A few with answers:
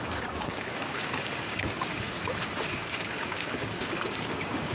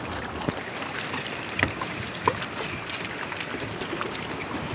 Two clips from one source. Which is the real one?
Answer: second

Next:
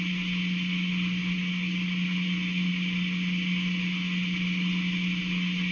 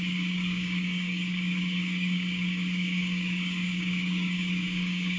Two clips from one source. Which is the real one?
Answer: first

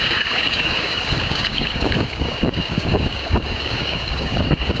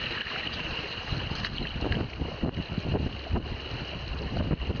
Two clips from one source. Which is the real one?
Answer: second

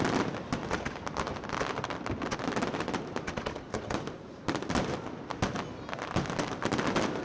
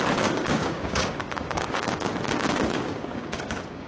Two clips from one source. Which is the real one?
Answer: first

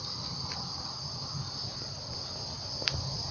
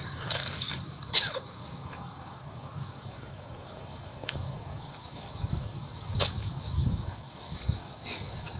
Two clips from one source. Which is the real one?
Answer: first